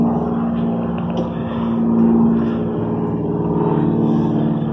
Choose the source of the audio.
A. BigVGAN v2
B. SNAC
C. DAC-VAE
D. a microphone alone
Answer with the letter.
D